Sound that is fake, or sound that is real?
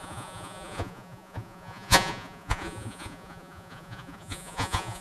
fake